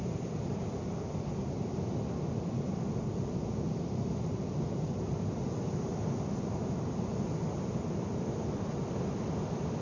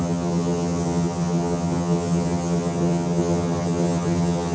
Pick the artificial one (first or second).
second